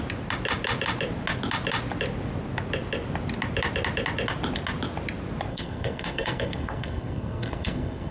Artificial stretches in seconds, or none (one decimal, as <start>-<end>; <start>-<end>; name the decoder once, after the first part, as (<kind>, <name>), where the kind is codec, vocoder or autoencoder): 5.5-8.1 (codec, SNAC)